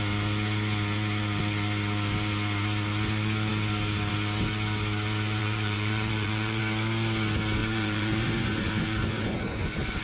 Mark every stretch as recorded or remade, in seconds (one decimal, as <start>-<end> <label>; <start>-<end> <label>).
0.0-5.4 recorded; 5.4-6.6 remade; 6.6-7.6 recorded; 7.6-10.0 remade